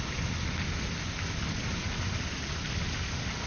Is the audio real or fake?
real